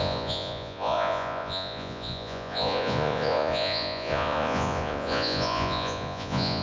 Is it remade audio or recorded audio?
remade